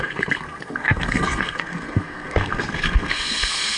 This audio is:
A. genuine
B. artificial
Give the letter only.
B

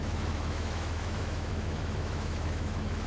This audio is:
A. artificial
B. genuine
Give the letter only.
A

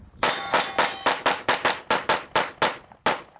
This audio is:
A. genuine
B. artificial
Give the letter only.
A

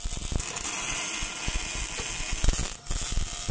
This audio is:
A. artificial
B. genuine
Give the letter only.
B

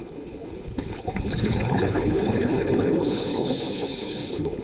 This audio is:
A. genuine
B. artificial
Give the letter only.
B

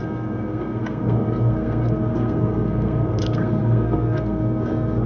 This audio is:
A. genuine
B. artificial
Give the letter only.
B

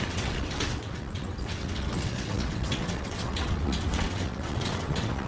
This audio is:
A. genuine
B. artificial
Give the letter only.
B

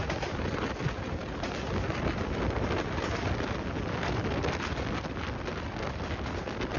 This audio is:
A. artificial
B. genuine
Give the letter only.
B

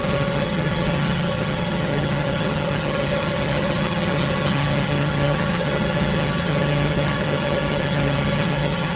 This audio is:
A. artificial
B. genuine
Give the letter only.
A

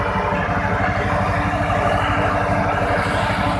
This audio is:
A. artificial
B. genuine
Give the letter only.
B